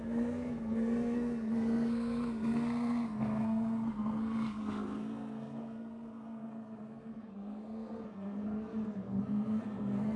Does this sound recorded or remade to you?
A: remade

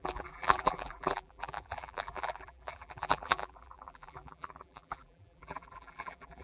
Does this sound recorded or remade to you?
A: remade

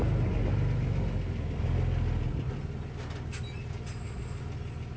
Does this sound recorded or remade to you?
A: recorded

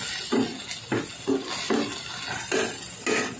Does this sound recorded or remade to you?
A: recorded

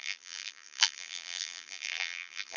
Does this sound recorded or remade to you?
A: remade